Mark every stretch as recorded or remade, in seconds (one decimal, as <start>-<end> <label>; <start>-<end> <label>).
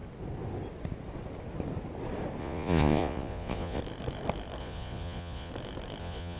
0.0-2.4 recorded; 2.4-3.8 remade; 3.8-4.6 recorded; 4.6-5.5 remade; 5.5-6.0 recorded; 6.0-6.4 remade